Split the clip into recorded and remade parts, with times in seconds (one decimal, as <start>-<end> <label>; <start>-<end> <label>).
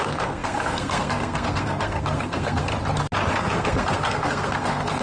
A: 0.0-2.7 remade; 2.7-3.3 recorded; 3.3-5.0 remade